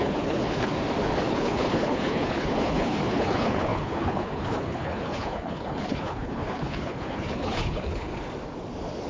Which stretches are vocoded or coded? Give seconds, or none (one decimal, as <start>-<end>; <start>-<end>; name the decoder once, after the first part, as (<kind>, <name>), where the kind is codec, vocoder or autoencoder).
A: 0.0-0.7 (codec, HILCodec); 1.3-8.1